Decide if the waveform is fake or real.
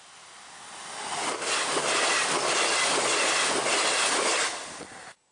real